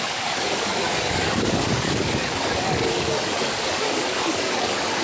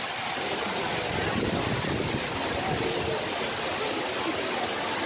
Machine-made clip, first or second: first